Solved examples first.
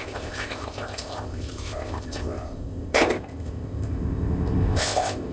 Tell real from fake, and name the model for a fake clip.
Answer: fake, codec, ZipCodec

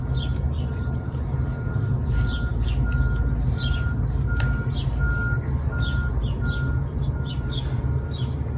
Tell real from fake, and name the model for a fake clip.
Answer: real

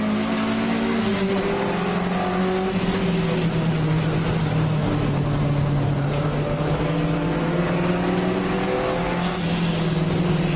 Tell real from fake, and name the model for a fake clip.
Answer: real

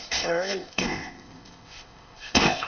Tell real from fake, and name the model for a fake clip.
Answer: fake, codec, ZipCodec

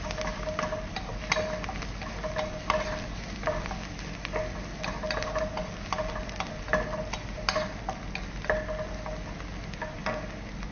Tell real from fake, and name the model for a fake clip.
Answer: real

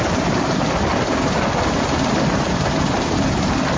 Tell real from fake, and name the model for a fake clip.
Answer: real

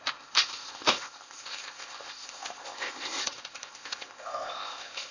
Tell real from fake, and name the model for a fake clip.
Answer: fake, codec, ZipCodec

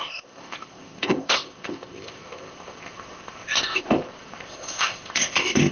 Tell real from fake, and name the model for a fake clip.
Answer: fake, codec, ZipCodec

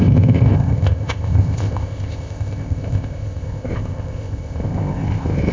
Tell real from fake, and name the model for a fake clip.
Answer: fake, codec, ZipCodec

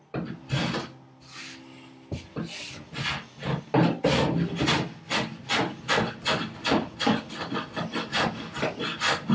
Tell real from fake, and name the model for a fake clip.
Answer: real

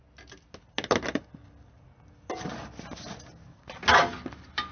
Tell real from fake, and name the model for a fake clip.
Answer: real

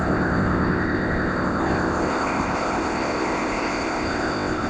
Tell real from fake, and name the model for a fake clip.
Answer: fake, codec, ZipCodec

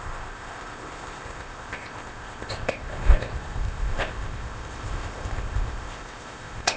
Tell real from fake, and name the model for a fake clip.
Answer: fake, codec, ZipCodec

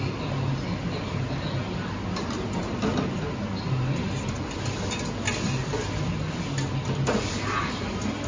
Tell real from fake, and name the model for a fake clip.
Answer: real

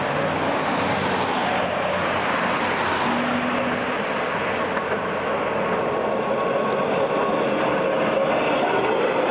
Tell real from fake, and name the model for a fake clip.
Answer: real